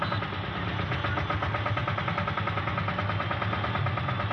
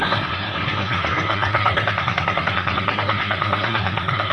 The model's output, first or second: second